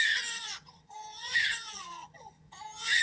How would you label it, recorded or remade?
remade